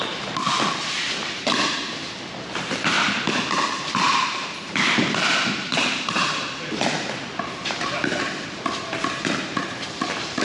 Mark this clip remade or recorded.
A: remade